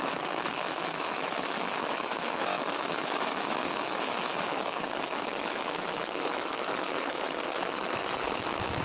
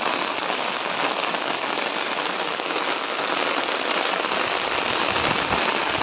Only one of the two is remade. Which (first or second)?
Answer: first